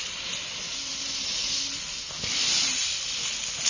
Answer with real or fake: real